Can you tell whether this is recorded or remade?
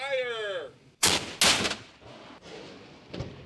recorded